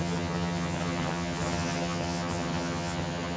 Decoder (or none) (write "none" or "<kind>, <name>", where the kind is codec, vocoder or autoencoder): vocoder, HiFi-GAN